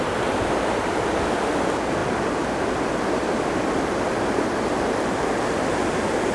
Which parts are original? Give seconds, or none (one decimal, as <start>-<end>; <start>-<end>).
0.0-6.3